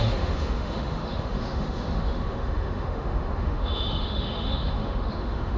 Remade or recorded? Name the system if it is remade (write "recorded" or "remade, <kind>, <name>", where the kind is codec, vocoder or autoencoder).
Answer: remade, autoencoder, DAC-VAE